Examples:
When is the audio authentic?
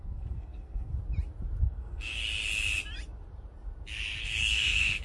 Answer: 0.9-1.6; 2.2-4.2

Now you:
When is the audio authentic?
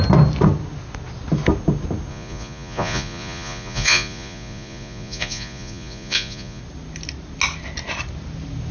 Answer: 0.0-2.1; 6.6-8.7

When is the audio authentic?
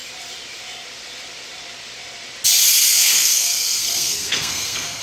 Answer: 0.0-2.9